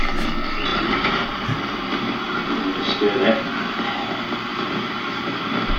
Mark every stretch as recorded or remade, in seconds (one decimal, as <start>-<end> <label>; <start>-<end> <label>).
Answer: 0.0-0.7 recorded; 0.7-2.4 remade; 2.4-4.5 recorded; 4.5-5.8 remade